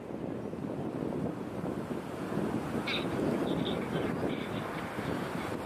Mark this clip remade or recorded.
recorded